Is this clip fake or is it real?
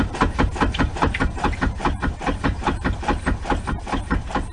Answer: fake